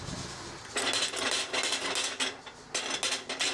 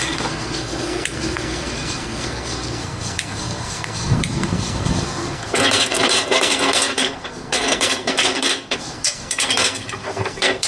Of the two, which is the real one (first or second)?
first